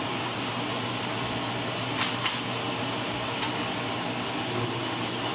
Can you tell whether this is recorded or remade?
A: recorded